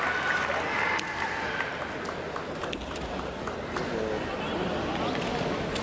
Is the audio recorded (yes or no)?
yes